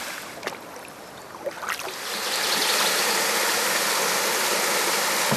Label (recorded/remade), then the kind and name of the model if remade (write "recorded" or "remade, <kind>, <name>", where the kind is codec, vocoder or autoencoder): recorded